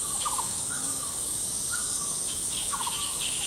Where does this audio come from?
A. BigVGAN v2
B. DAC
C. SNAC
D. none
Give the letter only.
B